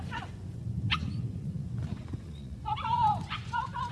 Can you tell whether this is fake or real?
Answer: fake